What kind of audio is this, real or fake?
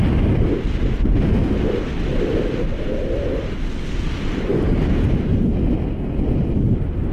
real